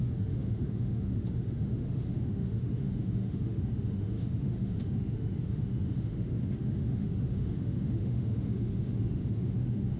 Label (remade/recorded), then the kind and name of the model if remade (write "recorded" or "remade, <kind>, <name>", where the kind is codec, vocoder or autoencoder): remade, autoencoder, DAC-VAE